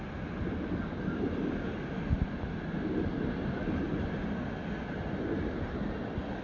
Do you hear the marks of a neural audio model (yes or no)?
no